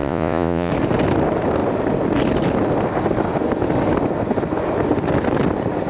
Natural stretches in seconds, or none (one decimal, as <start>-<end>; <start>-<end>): 0.7-5.9